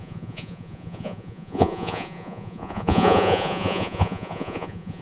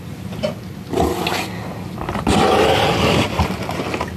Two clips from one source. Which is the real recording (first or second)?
second